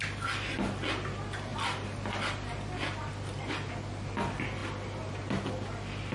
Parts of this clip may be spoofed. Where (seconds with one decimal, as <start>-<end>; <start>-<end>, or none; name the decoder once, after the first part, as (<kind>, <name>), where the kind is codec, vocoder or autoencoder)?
none